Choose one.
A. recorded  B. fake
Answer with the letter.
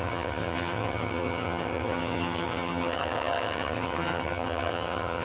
B